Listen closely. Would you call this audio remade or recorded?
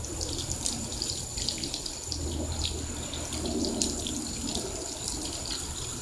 recorded